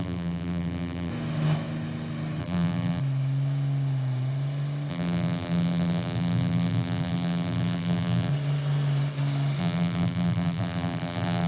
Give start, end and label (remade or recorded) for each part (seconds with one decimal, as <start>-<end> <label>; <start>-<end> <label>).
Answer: 0.0-1.1 remade; 1.1-2.4 recorded; 2.4-3.0 remade; 3.0-4.9 recorded; 4.9-8.3 remade; 8.3-9.6 recorded; 9.6-11.5 remade